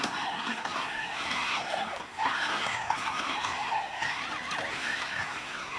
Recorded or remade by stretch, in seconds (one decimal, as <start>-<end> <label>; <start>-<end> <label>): 0.0-4.2 remade; 4.2-4.7 recorded; 4.7-5.8 remade